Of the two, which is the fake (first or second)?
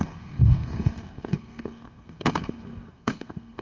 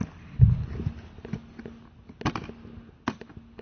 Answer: first